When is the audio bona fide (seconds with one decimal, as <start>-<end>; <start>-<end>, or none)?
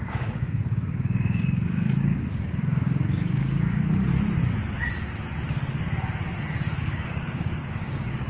4.1-6.8